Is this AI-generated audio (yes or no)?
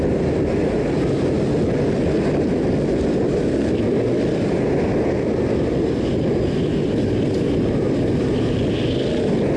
no